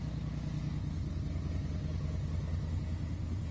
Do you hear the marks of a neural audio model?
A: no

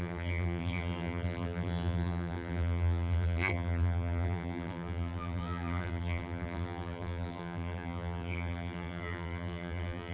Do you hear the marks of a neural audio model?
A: yes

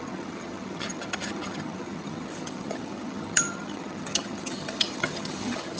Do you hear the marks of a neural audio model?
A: yes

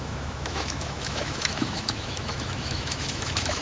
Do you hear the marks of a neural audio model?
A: yes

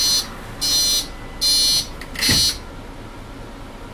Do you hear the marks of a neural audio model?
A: no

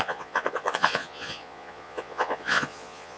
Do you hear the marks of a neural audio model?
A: yes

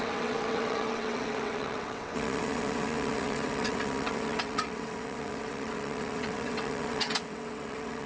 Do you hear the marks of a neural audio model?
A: yes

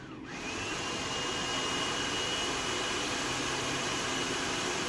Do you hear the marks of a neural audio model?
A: no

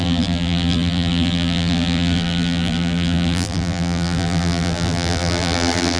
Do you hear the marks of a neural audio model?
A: yes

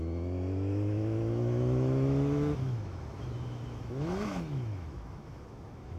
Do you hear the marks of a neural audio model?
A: yes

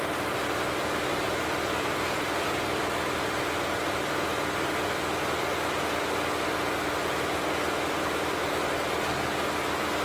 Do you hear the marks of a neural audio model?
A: no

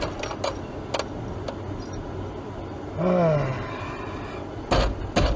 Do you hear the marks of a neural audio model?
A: no